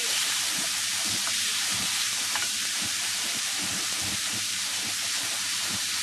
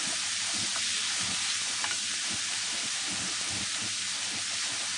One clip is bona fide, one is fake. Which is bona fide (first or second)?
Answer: second